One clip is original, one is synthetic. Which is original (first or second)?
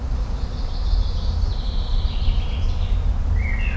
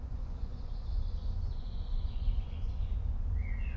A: first